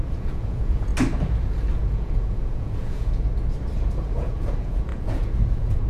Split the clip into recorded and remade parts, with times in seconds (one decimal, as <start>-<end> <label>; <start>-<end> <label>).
0.0-0.9 remade; 0.9-1.7 recorded; 1.7-3.3 remade; 3.3-4.0 recorded; 4.0-5.9 remade